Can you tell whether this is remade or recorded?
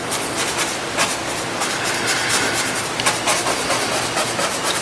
recorded